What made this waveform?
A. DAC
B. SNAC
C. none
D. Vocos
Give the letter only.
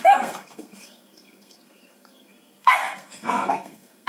B